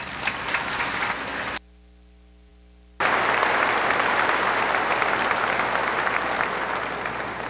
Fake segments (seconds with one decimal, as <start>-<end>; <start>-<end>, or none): none